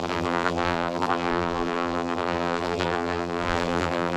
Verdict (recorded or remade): remade